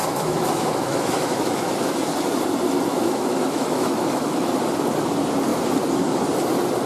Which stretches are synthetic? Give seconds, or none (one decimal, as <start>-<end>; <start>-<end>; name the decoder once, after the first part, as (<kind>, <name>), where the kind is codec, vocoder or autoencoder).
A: 0.0-2.0 (autoencoder, DAC-VAE); 2.9-4.5